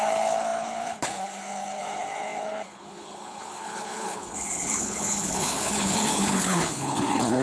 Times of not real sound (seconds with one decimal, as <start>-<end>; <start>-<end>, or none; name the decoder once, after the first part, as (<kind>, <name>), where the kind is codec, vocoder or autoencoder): 0.0-7.4 (codec, HILCodec)